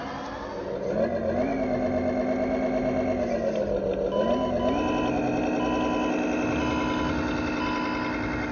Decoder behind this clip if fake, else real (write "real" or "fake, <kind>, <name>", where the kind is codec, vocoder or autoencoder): real